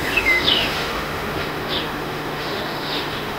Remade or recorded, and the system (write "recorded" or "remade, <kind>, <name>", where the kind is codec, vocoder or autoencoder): remade, autoencoder, DAC-VAE